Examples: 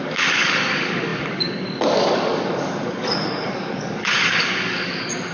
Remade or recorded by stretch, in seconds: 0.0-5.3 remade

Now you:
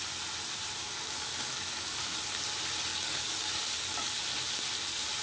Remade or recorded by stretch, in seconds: 0.0-0.8 recorded; 0.8-2.2 remade; 2.2-2.9 recorded; 2.9-4.2 remade; 4.2-5.2 recorded